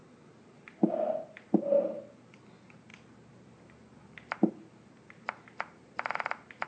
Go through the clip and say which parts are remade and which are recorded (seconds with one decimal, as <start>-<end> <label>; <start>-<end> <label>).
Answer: 0.0-6.7 recorded